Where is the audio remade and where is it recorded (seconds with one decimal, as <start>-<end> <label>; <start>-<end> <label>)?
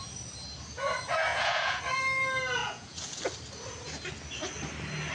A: 0.0-1.3 recorded; 1.3-1.8 remade; 1.8-2.6 recorded; 2.6-3.2 remade; 3.2-5.1 recorded